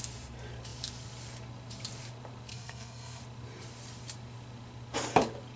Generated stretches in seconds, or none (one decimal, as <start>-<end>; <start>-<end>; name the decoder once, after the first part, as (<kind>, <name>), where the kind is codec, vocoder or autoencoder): 2.5-3.2 (codec, SNAC)